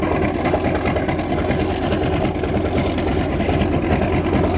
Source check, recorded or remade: recorded